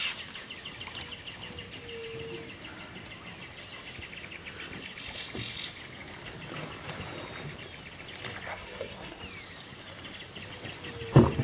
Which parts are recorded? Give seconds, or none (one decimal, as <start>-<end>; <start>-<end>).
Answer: 0.0-8.5; 9.2-11.4

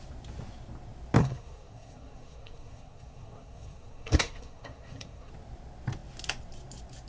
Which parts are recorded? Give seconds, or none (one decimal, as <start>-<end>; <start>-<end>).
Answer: 0.0-1.2; 5.3-7.1

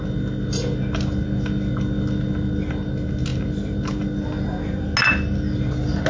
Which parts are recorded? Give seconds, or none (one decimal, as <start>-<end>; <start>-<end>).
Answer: 0.0-6.1